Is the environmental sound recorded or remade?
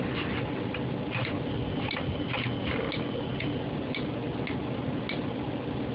recorded